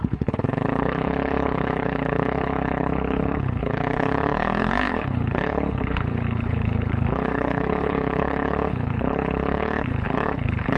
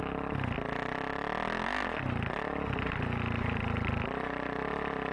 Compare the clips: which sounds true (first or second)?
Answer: second